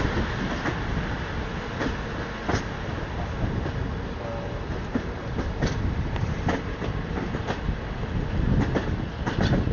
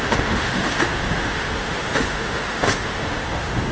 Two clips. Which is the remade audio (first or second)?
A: second